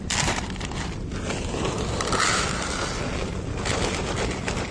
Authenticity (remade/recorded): recorded